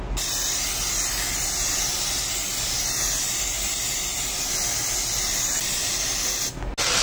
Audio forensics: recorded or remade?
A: recorded